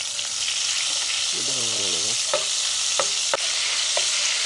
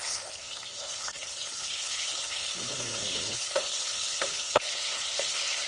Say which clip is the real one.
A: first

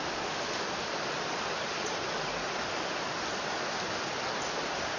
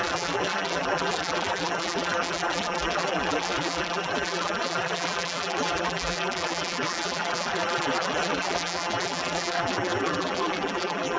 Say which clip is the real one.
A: first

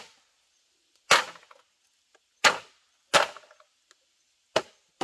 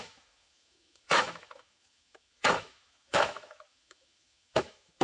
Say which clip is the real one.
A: first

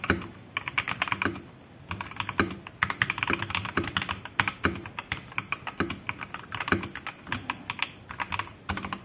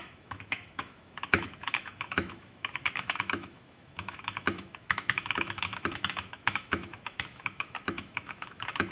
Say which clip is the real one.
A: first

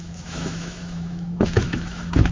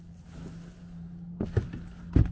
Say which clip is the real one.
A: second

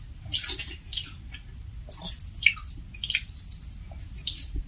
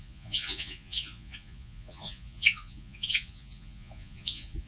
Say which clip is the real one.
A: first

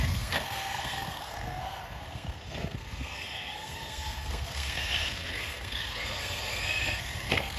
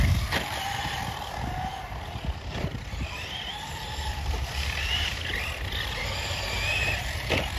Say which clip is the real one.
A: second